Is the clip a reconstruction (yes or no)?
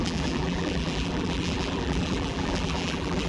yes